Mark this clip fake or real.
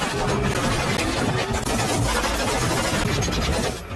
real